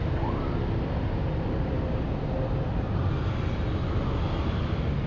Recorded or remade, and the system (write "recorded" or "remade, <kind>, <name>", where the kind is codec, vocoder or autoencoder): recorded